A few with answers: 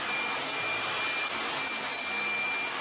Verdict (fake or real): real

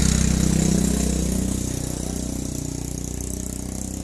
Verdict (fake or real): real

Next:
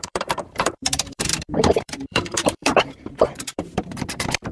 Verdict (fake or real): fake